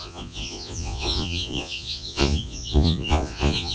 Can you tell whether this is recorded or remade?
remade